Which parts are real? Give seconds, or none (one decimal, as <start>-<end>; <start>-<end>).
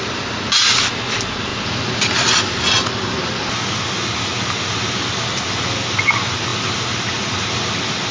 0.0-8.1